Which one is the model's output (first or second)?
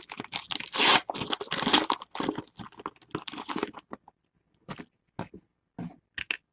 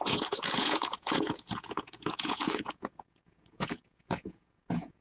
second